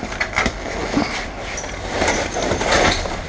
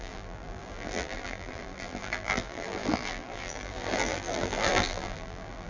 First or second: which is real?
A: first